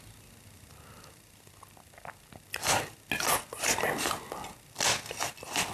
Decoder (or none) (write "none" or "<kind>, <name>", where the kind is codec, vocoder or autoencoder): none